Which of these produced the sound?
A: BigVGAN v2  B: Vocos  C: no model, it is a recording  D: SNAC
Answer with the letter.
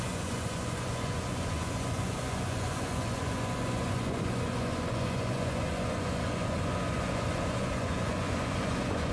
B